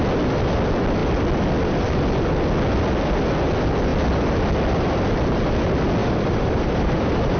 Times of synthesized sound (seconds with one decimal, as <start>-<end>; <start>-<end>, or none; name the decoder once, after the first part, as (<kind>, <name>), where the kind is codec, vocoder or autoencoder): 6.0-7.4 (vocoder, BigVGAN v2)